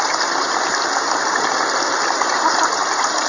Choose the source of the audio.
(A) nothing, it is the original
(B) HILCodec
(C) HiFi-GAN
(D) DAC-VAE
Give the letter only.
A